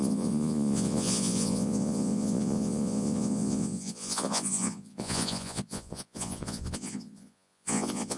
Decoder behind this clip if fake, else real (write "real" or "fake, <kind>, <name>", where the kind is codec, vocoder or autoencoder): fake, vocoder, Vocos